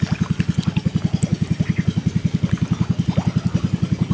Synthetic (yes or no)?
no